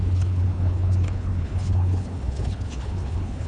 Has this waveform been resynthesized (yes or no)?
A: yes